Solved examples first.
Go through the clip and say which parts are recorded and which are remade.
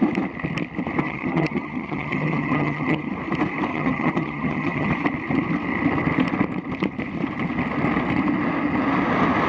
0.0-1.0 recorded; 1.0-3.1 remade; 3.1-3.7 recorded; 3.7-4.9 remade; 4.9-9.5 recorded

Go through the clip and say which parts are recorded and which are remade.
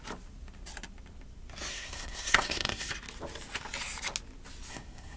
0.0-1.7 recorded; 1.7-2.9 remade; 2.9-4.7 recorded; 4.7-5.2 remade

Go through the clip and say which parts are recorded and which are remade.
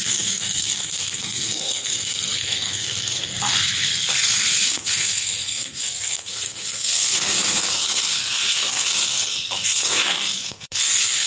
0.0-11.3 remade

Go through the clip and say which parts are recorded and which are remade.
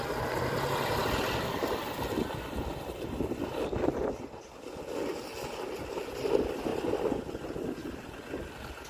0.0-8.9 recorded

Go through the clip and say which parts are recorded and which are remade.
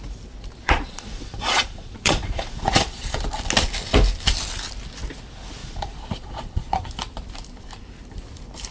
0.0-0.6 recorded; 0.6-3.2 remade; 3.2-5.6 recorded; 5.6-6.9 remade; 6.9-8.7 recorded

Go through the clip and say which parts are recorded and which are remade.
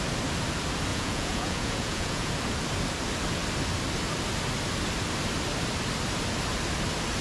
0.0-0.9 recorded; 0.9-2.3 remade; 2.3-7.2 recorded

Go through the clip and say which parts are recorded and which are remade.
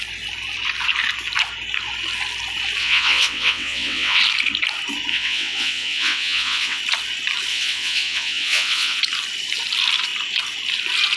0.0-2.8 recorded; 2.8-4.2 remade; 4.2-5.1 recorded; 5.1-6.8 remade; 6.8-7.5 recorded; 7.5-9.0 remade; 9.0-11.2 recorded